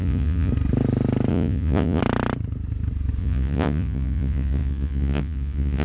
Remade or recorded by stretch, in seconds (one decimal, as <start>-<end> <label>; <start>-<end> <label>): 0.0-0.5 remade; 0.5-1.3 recorded; 1.3-2.0 remade; 2.0-3.2 recorded; 3.2-5.8 remade